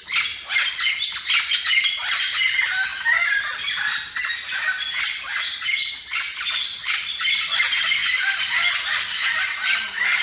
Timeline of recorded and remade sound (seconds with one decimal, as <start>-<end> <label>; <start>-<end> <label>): 0.0-10.2 recorded